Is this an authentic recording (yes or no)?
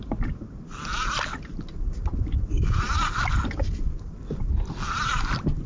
yes